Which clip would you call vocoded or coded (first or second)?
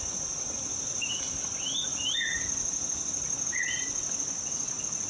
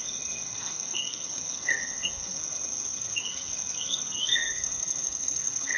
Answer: second